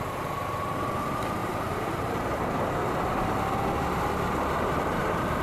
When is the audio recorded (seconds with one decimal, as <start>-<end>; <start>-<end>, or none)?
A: 0.0-1.4; 2.5-5.4